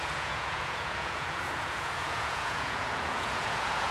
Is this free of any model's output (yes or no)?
no